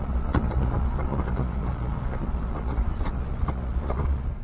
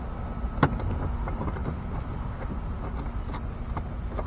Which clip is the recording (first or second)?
second